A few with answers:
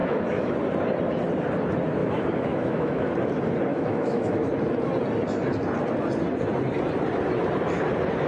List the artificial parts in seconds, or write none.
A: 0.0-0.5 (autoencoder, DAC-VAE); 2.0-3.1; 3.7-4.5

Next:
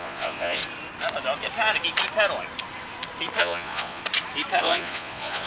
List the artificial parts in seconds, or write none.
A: 0.0-0.6 (vocoder, Vocos); 3.4-4.0; 4.6-5.5